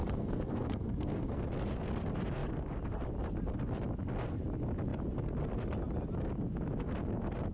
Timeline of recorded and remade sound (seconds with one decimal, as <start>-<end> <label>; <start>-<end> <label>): 0.0-1.4 remade; 1.4-7.5 recorded